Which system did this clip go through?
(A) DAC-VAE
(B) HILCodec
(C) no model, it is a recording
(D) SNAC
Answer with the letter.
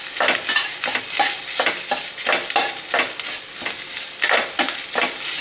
C